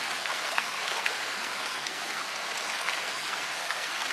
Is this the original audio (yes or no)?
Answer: no